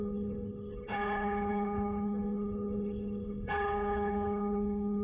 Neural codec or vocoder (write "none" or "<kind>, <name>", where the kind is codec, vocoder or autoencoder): codec, HILCodec